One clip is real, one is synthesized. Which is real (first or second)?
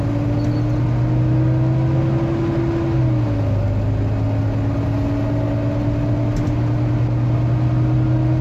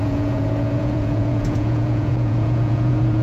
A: first